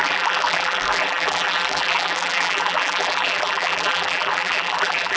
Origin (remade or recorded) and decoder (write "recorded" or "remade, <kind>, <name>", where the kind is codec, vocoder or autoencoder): remade, vocoder, BigVGAN v2